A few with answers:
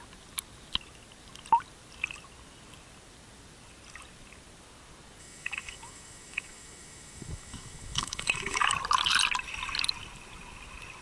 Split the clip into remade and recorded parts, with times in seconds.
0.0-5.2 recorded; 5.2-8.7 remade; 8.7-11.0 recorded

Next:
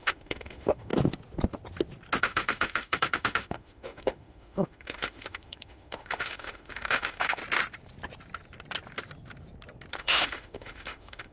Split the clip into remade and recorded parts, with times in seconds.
0.0-0.9 remade; 0.9-2.2 recorded; 2.2-7.4 remade; 7.4-9.9 recorded; 9.9-11.3 remade